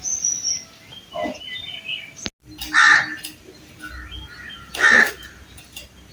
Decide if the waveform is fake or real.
real